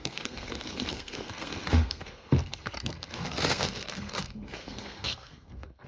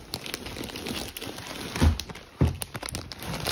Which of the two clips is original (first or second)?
second